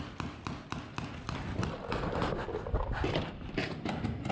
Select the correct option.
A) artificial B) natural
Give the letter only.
B